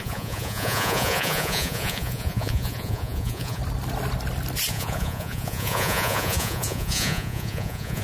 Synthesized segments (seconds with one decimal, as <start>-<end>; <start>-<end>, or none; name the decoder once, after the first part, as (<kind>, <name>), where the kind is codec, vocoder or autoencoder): 0.0-3.6 (vocoder, Vocos); 4.7-8.0